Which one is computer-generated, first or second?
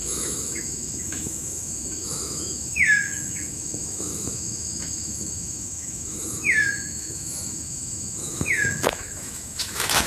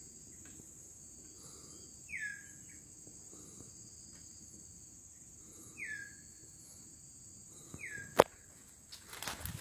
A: first